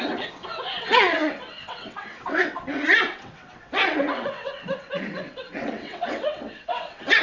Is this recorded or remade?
remade